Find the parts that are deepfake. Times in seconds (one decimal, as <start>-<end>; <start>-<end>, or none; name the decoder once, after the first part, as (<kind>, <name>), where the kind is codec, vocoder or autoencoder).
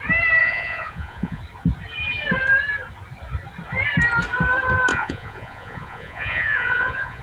0.4-1.4 (vocoder, Vocos); 4.9-7.2